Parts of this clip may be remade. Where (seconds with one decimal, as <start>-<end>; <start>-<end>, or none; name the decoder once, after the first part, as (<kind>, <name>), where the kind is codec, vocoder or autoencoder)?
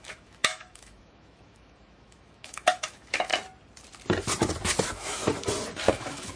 0.0-3.3 (autoencoder, DAC-VAE); 4.8-5.2; 5.9-6.4